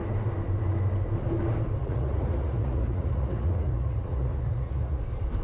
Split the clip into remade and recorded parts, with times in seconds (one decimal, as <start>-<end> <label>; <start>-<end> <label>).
0.0-1.8 recorded; 1.8-5.0 remade; 5.0-5.4 recorded